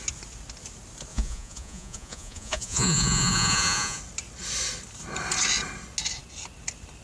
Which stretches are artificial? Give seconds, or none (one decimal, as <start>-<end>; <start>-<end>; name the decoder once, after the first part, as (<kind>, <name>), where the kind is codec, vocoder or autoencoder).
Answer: 1.1-4.0 (vocoder, Vocos)